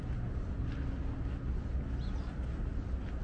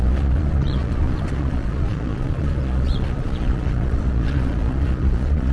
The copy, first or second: second